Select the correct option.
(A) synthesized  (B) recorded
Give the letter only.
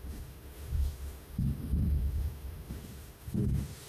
A